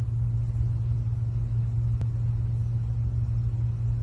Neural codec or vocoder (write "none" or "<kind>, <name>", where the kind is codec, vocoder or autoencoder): none